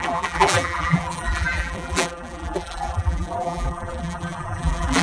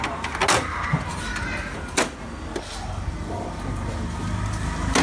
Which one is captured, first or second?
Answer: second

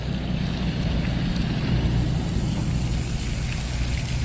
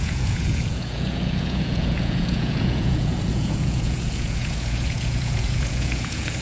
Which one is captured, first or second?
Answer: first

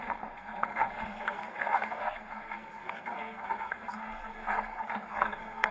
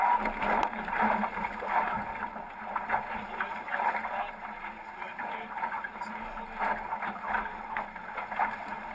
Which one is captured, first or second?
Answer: second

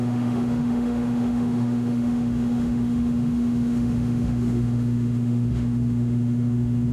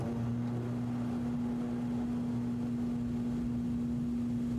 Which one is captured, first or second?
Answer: second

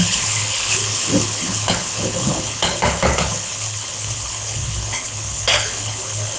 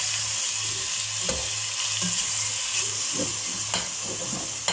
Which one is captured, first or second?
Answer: second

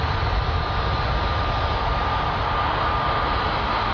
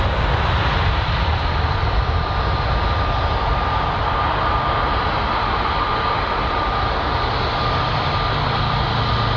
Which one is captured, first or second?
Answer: first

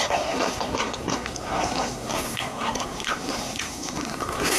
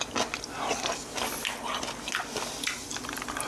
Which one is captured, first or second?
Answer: second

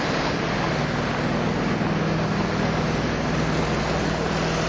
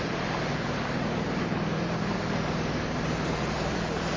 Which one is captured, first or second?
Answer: first